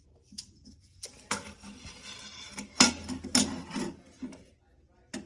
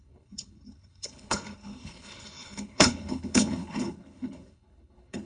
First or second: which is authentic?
first